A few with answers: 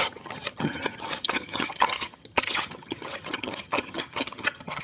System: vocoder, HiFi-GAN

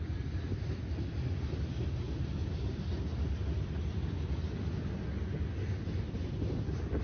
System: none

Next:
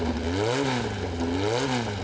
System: none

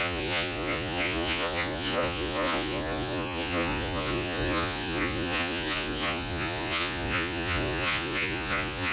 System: vocoder, Vocos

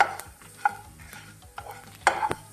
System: none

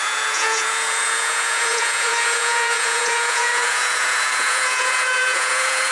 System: vocoder, Vocos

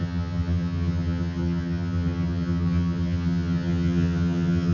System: vocoder, HiFi-GAN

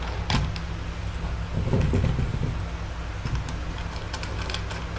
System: none